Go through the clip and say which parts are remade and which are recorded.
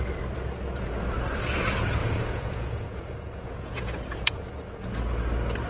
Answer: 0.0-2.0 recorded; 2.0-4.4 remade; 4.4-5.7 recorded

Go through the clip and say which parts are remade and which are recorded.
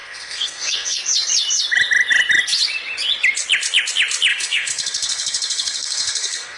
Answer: 0.0-1.0 remade; 1.0-4.3 recorded; 4.3-6.6 remade